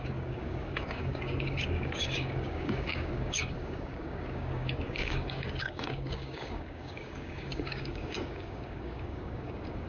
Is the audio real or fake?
fake